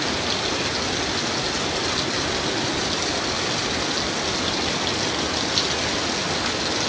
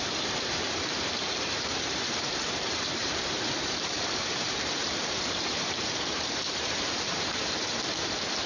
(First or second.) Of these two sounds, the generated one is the second